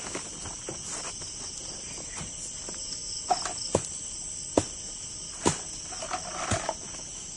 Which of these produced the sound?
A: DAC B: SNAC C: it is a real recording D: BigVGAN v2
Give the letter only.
C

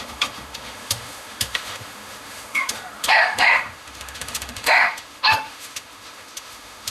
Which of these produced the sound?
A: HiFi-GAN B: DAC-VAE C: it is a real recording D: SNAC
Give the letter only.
B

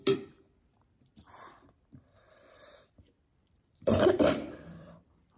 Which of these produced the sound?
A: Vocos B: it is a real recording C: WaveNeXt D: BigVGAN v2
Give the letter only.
D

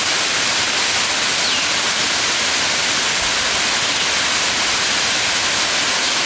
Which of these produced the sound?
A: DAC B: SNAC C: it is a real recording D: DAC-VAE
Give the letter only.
C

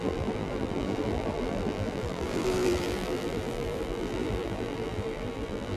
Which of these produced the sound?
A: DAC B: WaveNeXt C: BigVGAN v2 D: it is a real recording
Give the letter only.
C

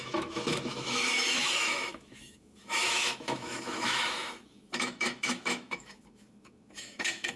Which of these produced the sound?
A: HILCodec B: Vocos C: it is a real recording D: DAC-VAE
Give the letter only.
D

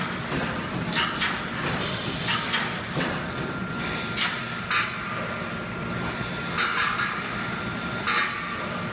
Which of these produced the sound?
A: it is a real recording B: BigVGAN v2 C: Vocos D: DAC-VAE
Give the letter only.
A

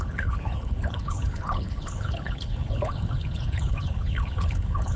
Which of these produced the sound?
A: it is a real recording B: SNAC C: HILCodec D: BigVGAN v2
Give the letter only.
C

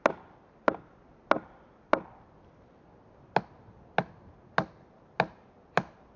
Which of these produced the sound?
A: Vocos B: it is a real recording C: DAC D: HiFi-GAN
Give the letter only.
B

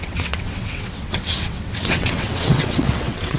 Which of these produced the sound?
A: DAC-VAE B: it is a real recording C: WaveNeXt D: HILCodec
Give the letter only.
C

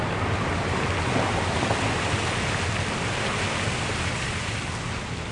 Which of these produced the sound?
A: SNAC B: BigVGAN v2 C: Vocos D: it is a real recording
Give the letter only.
D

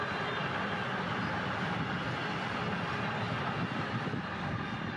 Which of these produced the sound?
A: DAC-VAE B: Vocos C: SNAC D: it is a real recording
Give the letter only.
D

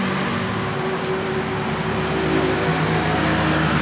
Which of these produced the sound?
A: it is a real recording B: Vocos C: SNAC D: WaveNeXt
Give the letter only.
A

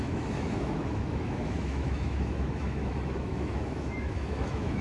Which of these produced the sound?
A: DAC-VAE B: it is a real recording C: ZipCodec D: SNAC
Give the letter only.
A